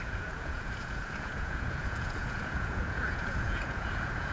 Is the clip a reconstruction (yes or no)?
yes